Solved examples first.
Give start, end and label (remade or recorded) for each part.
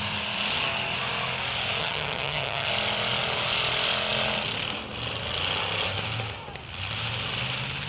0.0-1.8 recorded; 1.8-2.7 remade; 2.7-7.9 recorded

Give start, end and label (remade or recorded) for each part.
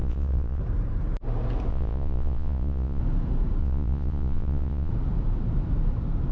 0.0-0.6 remade; 0.6-1.7 recorded; 1.7-3.0 remade; 3.0-3.6 recorded; 3.6-4.9 remade; 4.9-6.3 recorded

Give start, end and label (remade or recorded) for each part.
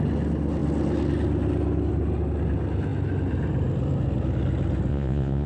0.0-4.9 recorded; 4.9-5.5 remade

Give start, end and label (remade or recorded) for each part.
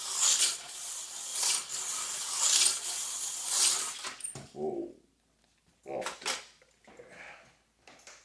0.0-1.3 recorded; 1.3-5.7 remade; 5.7-8.2 recorded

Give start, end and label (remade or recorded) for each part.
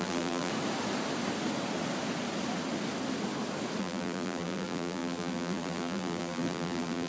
0.0-0.5 remade; 0.5-3.8 recorded; 3.8-7.1 remade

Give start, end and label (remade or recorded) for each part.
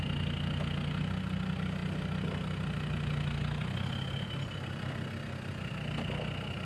0.0-6.7 recorded